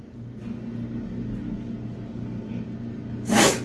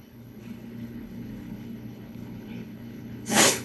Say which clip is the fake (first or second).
second